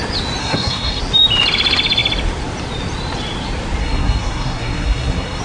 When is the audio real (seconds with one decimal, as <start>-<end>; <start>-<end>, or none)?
0.0-0.4; 1.0-3.8